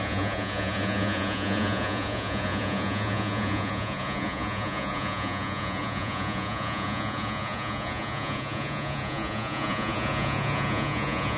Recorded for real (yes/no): no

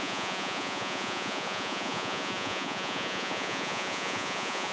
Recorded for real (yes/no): no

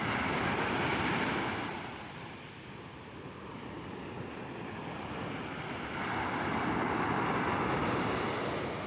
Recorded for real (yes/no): yes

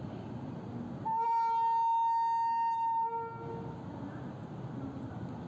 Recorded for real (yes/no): yes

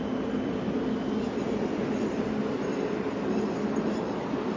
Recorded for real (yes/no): yes